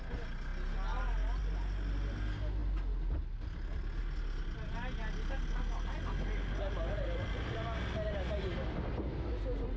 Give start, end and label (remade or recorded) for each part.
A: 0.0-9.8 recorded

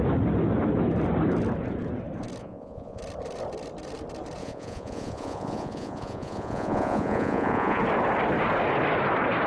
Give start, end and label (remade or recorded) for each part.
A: 0.0-2.4 recorded; 2.4-3.0 remade; 3.0-4.4 recorded; 4.4-7.8 remade; 7.8-9.5 recorded

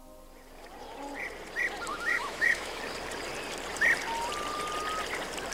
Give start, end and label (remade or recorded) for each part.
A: 0.0-1.9 recorded; 1.9-2.8 remade; 2.8-5.5 recorded

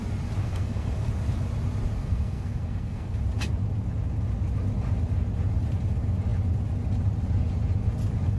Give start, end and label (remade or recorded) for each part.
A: 0.0-0.4 recorded; 0.4-1.1 remade; 1.1-2.0 recorded; 2.0-3.2 remade; 3.2-8.4 recorded

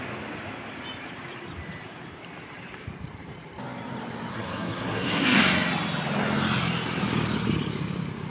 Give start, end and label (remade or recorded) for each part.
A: 0.0-4.3 recorded; 4.3-5.4 remade; 5.4-8.3 recorded

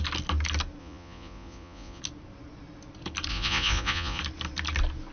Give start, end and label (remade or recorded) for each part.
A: 0.0-0.8 recorded; 0.8-2.0 remade; 2.0-3.3 recorded; 3.3-4.2 remade; 4.2-5.1 recorded

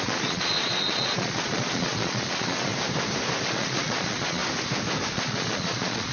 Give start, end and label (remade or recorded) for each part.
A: 0.0-2.7 remade; 2.7-3.5 recorded; 3.5-4.4 remade; 4.4-5.1 recorded; 5.1-6.1 remade

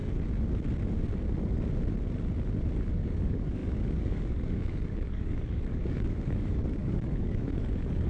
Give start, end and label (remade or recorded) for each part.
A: 0.0-2.8 recorded; 2.8-8.1 remade